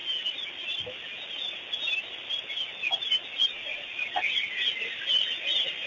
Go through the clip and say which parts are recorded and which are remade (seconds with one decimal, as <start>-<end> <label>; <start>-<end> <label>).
0.0-3.4 recorded; 3.4-3.9 remade; 3.9-5.9 recorded